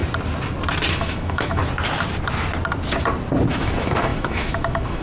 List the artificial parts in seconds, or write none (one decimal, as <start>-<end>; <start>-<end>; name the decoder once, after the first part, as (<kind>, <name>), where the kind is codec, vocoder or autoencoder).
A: 0.9-1.6 (autoencoder, DAC-VAE); 3.5-5.0